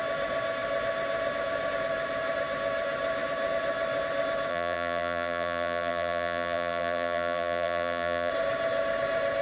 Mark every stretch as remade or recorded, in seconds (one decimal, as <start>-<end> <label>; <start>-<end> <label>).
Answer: 0.0-4.5 recorded; 4.5-8.3 remade; 8.3-9.4 recorded